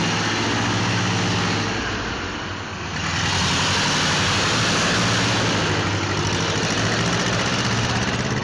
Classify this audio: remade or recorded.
recorded